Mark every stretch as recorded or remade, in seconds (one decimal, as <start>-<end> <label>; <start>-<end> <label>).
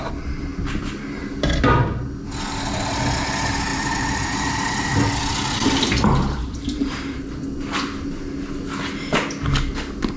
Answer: 0.0-3.7 recorded; 3.7-4.5 remade; 4.5-6.4 recorded; 6.4-7.3 remade; 7.3-10.2 recorded